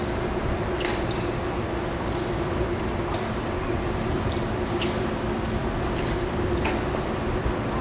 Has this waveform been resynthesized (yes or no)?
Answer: no